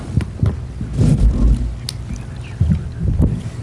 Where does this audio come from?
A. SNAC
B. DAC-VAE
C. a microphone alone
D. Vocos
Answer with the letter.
C